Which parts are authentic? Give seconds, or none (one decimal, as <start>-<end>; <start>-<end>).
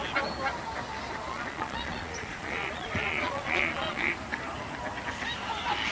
0.0-1.3; 4.1-5.9